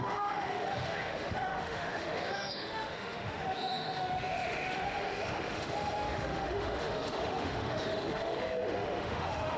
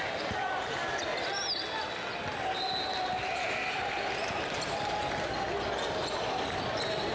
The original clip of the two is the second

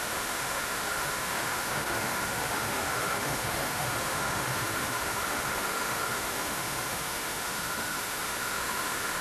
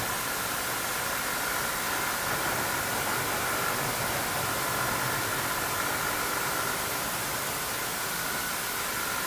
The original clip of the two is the second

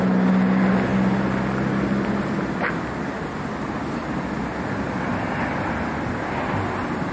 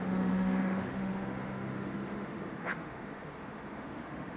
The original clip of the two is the first